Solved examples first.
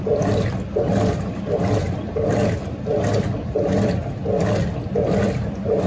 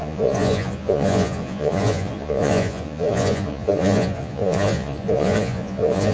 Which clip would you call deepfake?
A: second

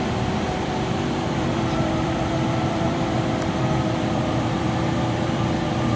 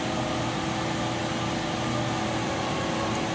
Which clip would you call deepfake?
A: first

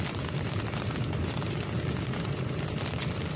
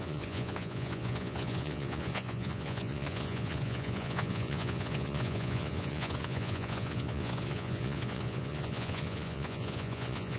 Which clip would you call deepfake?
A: second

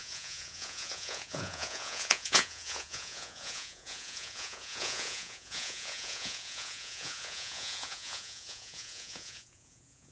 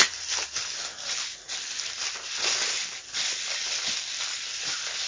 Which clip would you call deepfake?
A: first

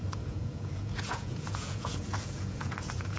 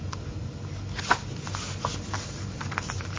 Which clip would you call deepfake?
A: first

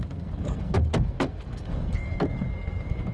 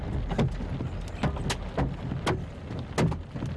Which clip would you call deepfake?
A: first